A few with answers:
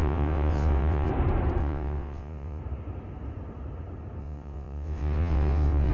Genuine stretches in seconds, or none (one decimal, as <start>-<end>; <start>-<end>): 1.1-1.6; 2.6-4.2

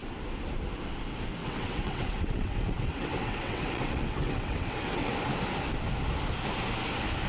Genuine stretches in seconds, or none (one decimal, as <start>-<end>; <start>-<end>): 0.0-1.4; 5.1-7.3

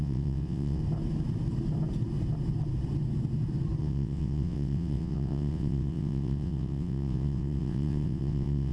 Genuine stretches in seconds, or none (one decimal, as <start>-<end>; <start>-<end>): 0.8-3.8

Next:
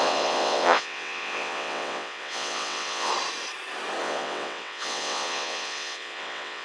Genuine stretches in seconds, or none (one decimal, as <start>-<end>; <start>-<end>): 3.1-4.0

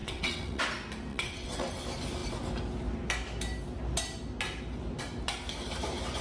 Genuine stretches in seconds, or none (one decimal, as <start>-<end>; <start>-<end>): 0.6-1.1; 1.7-6.2

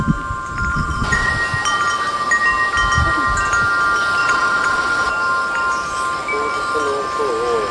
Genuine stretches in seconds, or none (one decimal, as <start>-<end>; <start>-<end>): 0.0-0.7; 1.3-4.2; 5.1-7.7